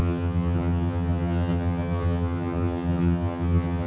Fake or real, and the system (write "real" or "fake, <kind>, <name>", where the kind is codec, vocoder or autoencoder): fake, vocoder, HiFi-GAN